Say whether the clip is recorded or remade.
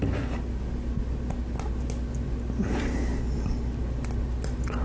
recorded